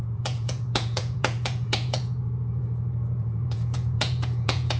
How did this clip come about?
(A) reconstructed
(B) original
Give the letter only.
A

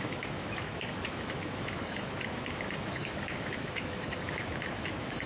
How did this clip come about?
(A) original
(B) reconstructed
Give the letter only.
B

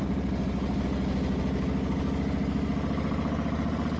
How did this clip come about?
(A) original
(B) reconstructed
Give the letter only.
A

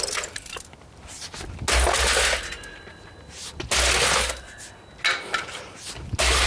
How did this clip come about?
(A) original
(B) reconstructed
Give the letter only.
A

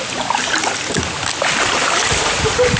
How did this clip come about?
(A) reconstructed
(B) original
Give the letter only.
B